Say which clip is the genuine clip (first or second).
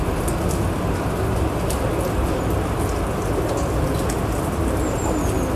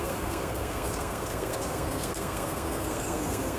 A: first